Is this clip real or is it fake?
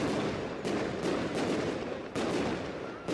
real